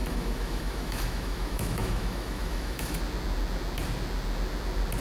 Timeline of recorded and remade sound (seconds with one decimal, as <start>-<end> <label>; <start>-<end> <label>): 0.0-3.0 remade; 3.0-5.0 recorded